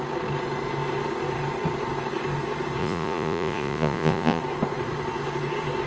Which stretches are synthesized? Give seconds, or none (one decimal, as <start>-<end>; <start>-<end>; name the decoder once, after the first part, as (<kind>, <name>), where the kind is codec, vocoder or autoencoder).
2.8-4.4 (vocoder, Vocos)

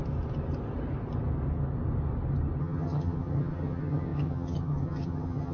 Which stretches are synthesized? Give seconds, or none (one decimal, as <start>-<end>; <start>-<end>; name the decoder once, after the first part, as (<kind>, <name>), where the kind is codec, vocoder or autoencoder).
2.6-5.5 (vocoder, HiFi-GAN)

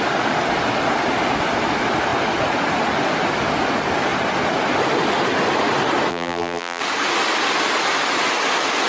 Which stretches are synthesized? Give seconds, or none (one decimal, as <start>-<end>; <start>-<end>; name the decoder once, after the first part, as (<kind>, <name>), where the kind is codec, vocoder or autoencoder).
6.1-6.8 (vocoder, BigVGAN v2)

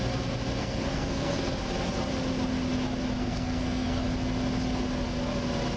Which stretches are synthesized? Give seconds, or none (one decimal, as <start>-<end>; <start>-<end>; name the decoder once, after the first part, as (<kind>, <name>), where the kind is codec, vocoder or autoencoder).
0.6-1.6 (codec, SNAC); 3.2-4.0